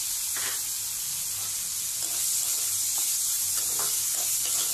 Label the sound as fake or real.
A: real